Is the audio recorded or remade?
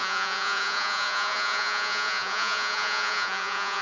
remade